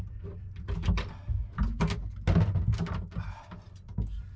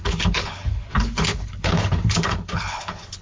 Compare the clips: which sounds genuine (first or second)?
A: first